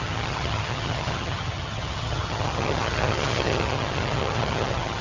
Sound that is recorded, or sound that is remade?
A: remade